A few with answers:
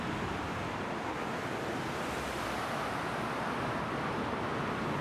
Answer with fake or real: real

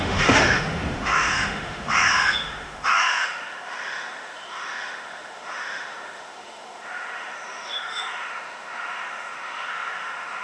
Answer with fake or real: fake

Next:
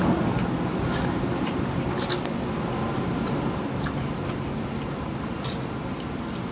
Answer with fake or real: real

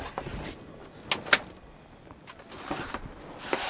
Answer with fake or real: real